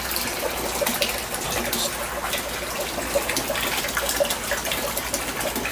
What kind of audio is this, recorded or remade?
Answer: recorded